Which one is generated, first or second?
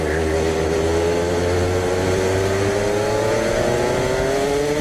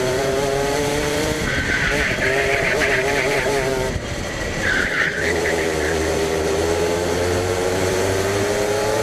second